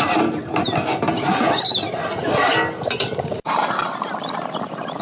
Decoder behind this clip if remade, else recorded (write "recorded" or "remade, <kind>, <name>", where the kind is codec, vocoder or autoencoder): recorded